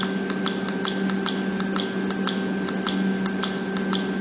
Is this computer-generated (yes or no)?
no